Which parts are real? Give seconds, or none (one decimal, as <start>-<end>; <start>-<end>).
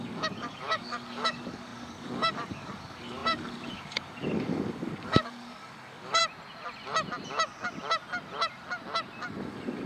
6.2-9.4